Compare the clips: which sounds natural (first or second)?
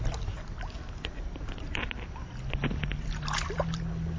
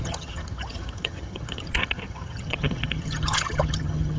first